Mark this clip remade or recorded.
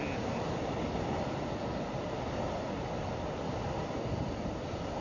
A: recorded